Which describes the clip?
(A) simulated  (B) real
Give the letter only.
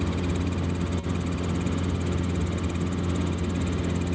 B